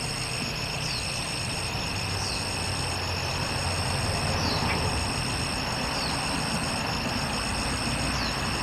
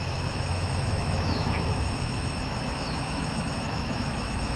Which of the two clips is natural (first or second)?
first